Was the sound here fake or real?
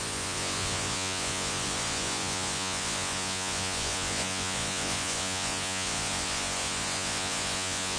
fake